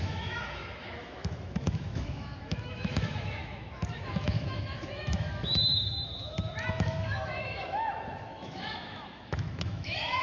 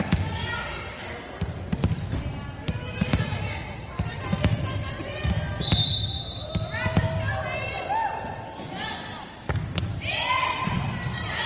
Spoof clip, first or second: first